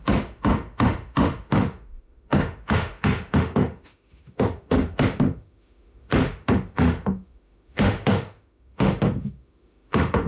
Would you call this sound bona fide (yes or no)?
no